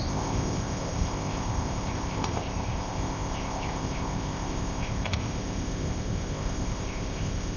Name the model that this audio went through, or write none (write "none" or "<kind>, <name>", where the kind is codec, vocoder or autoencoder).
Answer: codec, ZipCodec